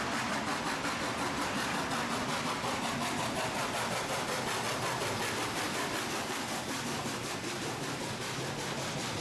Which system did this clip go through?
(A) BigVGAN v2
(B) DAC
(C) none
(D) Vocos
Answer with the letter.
C